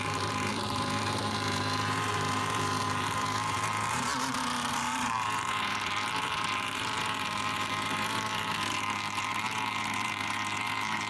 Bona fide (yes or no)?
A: no